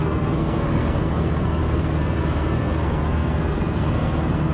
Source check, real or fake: fake